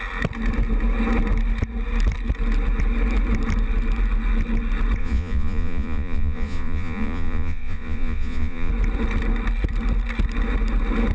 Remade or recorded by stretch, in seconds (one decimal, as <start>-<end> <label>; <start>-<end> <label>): 0.0-5.0 recorded; 5.0-8.7 remade; 8.7-11.1 recorded